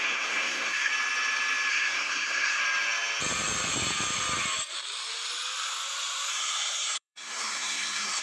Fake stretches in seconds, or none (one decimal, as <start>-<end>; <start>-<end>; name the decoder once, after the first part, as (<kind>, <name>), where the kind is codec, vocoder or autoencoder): 0.0-0.9 (codec, SNAC); 1.7-2.6; 6.3-8.2